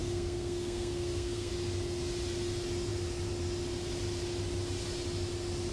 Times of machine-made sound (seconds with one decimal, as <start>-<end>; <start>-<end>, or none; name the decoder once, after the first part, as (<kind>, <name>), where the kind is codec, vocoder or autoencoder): 0.0-1.5 (codec, SNAC)